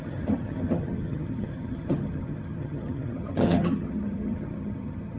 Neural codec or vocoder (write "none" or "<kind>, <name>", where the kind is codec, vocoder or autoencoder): vocoder, HiFi-GAN